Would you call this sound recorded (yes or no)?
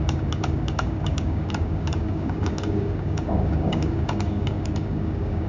no